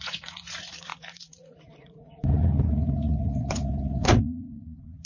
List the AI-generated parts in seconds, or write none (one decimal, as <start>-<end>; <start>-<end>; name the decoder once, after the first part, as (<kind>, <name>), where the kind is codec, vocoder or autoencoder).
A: 0.0-5.1 (vocoder, Vocos)